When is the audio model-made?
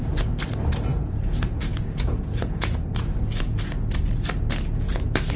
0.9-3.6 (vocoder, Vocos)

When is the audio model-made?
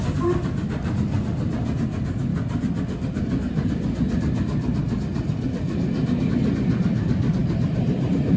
7.4-8.4 (vocoder, BigVGAN v2)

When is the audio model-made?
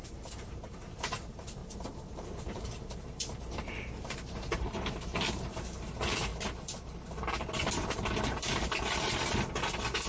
0.0-6.3 (vocoder, BigVGAN v2)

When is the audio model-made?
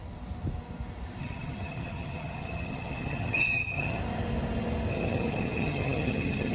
1.2-4.0 (vocoder, HiFi-GAN); 4.9-6.5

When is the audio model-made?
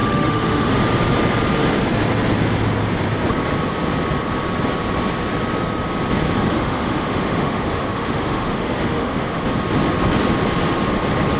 0.0-0.8 (autoencoder, DAC-VAE); 6.5-9.4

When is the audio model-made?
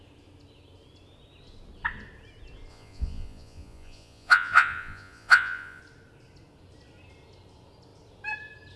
2.7-5.8 (vocoder, Vocos)